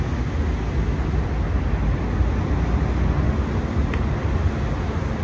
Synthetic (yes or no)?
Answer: no